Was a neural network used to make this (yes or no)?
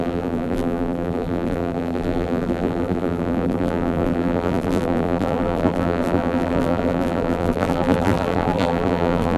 yes